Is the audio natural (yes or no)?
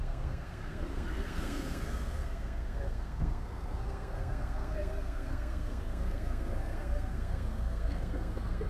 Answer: no